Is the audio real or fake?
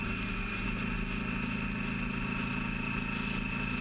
real